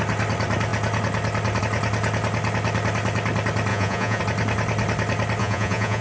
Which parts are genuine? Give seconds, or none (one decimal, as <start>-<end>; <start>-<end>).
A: 0.0-3.7; 4.2-5.4